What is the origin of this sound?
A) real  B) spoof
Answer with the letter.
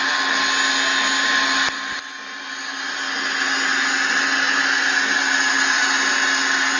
A